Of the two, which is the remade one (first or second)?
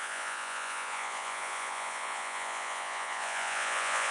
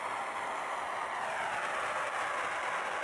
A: first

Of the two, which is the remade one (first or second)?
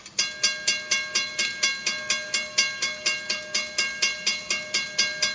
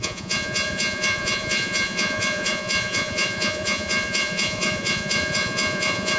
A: second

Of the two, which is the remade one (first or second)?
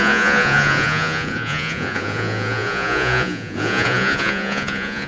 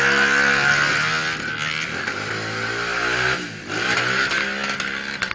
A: first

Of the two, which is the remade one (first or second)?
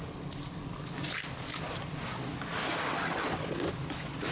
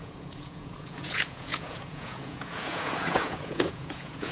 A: second